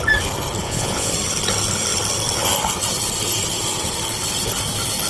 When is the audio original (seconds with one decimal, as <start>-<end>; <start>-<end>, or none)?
0.0-0.6; 1.1-5.1